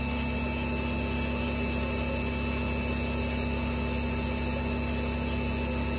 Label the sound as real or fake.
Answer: real